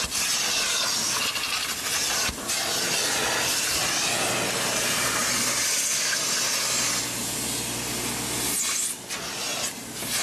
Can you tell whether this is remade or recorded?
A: recorded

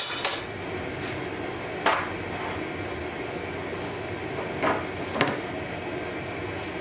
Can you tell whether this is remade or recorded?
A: recorded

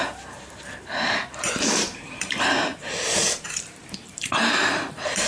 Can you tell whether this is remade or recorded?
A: remade